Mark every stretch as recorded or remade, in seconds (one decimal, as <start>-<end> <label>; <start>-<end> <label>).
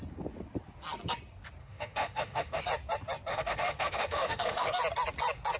0.0-1.6 recorded; 1.6-2.6 remade; 2.6-3.3 recorded; 3.3-4.8 remade; 4.8-5.6 recorded